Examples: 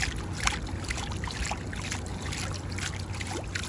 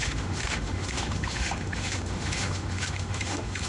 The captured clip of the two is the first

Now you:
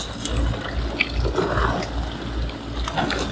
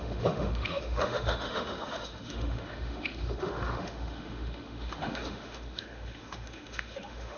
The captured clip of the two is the first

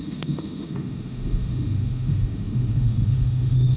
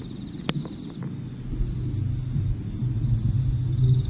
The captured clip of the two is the second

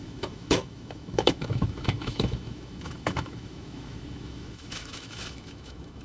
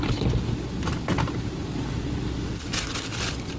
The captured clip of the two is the second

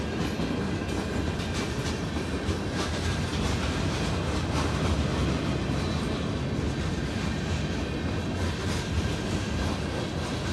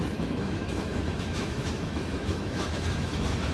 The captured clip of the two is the first